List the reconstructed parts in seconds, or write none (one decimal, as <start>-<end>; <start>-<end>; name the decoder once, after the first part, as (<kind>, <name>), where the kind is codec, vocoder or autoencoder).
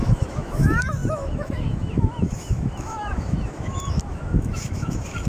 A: 0.0-5.3 (autoencoder, DAC-VAE)